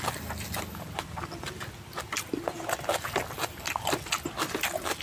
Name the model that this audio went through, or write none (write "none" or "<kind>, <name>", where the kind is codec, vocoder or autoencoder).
none